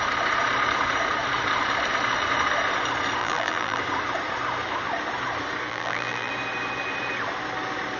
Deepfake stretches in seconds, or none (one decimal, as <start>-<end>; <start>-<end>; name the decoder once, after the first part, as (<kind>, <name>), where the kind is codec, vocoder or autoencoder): 3.2-3.8 (vocoder, BigVGAN v2); 5.7-6.3